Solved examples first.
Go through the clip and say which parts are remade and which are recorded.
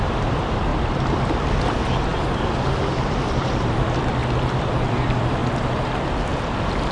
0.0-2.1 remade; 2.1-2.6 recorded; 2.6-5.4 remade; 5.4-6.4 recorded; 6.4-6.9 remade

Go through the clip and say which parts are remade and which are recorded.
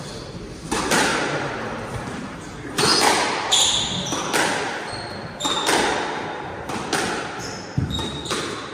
0.0-1.1 remade; 1.1-2.1 recorded; 2.1-2.9 remade; 2.9-7.8 recorded; 7.8-8.7 remade